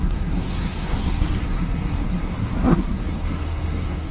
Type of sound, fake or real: fake